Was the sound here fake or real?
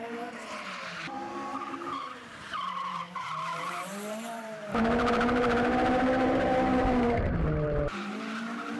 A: fake